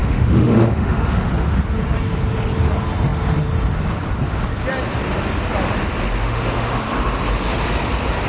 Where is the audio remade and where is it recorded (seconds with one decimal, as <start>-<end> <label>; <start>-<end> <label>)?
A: 0.0-1.3 remade; 1.3-6.2 recorded; 6.2-6.8 remade; 6.8-8.3 recorded

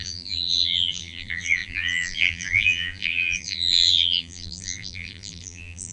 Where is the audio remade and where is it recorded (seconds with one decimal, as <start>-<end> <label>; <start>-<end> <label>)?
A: 0.0-5.9 remade

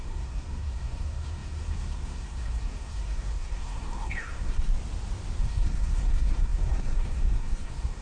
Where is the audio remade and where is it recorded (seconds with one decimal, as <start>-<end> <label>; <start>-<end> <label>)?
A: 0.0-4.7 remade; 4.7-5.4 recorded; 5.4-8.0 remade

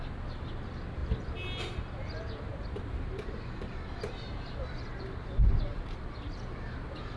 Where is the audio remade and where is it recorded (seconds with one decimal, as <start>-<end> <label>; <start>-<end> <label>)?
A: 0.0-2.5 recorded; 2.5-4.3 remade; 4.3-5.7 recorded; 5.7-6.4 remade; 6.4-7.2 recorded

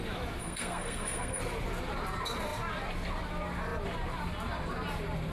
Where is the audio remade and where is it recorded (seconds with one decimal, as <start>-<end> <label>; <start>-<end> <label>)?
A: 0.0-0.4 recorded; 0.4-1.4 remade; 1.4-5.3 recorded